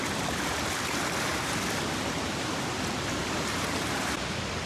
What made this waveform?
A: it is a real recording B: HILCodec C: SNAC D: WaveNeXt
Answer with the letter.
A